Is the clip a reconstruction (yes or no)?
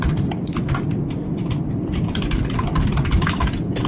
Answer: no